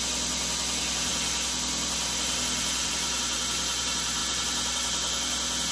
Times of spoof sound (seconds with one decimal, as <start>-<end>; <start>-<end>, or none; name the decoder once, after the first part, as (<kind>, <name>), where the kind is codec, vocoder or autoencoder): none